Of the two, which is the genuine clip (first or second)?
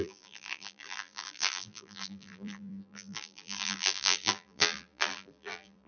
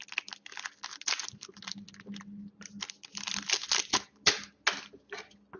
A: second